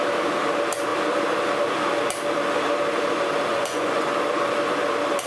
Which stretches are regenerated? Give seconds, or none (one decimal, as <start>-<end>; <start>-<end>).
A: 3.5-4.1